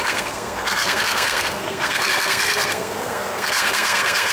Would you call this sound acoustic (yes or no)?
no